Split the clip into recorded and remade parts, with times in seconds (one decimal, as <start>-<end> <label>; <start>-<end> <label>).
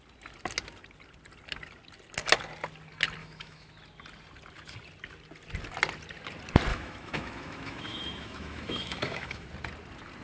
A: 0.0-3.2 recorded; 3.2-3.7 remade; 3.7-6.7 recorded; 6.7-9.5 remade; 9.5-10.2 recorded